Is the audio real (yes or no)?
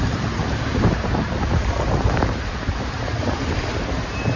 no